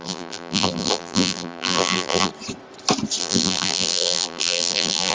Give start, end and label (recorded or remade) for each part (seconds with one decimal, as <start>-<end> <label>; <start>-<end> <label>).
0.0-2.3 remade; 2.3-3.2 recorded; 3.2-5.1 remade